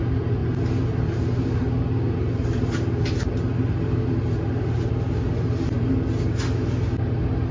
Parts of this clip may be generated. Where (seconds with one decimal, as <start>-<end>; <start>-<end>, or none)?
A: none